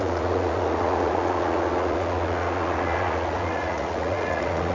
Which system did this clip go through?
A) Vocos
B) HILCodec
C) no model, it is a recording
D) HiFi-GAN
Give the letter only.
A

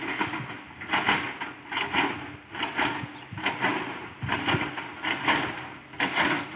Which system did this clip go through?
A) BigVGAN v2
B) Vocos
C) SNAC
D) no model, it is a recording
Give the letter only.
D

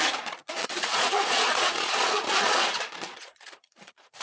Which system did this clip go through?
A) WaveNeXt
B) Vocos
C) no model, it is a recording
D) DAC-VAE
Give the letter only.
B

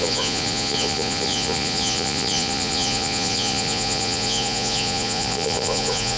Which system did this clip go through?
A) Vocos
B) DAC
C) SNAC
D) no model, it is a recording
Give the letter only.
A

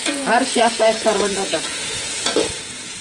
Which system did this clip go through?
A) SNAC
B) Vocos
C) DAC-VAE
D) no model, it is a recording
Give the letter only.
B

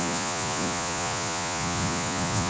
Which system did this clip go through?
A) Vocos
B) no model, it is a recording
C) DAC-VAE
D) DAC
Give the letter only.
A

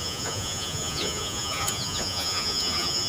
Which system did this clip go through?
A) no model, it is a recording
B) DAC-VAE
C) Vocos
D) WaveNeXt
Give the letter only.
C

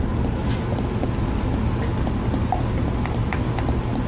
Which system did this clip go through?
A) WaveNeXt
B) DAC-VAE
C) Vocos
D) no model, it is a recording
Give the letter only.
D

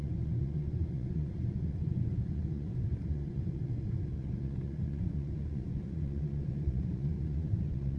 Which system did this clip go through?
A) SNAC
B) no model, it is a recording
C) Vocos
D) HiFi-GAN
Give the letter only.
C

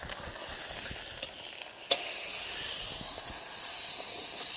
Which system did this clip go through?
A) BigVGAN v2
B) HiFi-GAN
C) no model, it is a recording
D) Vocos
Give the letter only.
C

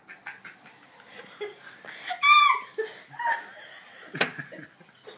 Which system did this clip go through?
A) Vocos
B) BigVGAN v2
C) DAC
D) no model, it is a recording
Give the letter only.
D